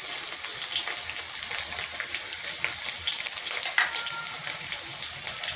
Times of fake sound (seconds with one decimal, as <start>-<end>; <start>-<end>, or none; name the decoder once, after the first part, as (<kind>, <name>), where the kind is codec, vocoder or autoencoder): none